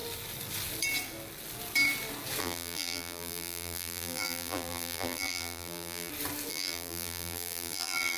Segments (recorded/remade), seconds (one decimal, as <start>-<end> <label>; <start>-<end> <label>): 0.0-2.4 recorded; 2.4-6.1 remade; 6.1-6.5 recorded; 6.5-8.2 remade